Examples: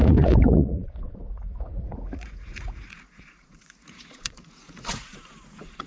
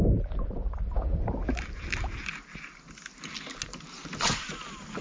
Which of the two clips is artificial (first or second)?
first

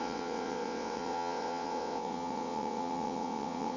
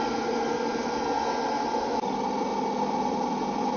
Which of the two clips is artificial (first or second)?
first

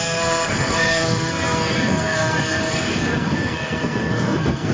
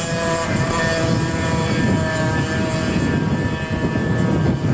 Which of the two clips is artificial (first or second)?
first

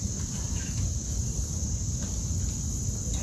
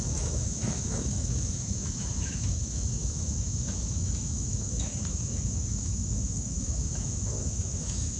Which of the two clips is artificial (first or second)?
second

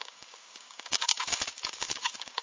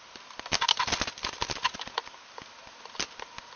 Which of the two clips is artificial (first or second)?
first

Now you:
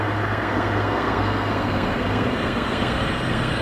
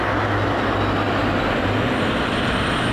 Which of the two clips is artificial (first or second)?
first